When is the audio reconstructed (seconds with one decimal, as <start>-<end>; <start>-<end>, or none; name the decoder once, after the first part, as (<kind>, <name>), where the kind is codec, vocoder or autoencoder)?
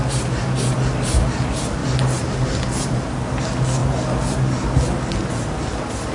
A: none